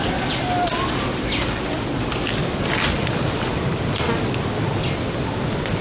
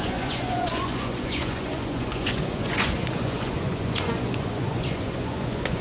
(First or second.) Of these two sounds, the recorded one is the first